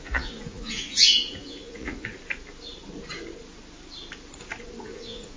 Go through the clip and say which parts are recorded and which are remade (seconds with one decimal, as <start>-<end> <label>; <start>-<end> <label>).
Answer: 0.0-2.1 remade; 2.1-4.8 recorded; 4.8-5.4 remade